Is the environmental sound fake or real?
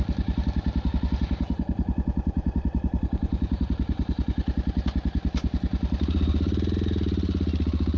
real